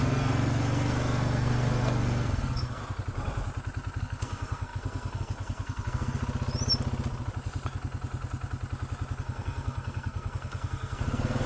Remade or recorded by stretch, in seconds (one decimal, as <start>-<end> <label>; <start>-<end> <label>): 0.0-2.8 remade; 2.8-4.0 recorded; 4.0-6.2 remade; 6.2-9.2 recorded; 9.2-11.5 remade